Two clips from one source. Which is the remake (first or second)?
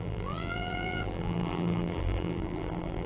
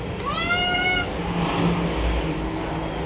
first